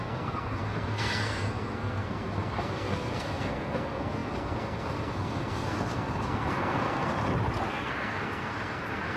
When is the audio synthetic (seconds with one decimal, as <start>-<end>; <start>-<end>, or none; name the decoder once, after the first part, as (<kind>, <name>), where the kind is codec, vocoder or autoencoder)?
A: 0.0-7.1 (codec, SNAC); 7.7-9.2